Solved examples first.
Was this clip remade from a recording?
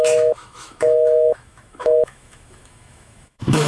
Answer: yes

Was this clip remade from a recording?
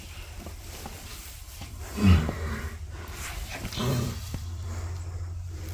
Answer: yes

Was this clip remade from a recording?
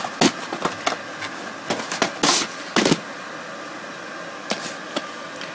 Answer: no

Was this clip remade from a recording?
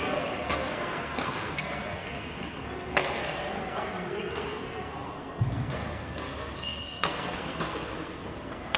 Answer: yes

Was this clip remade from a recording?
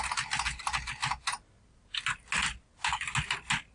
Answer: no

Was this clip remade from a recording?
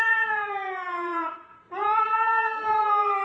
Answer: yes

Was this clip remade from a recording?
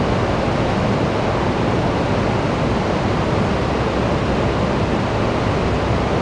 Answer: no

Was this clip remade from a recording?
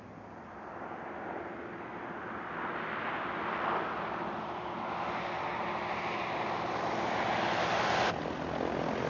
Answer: no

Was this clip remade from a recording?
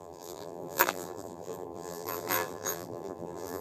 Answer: yes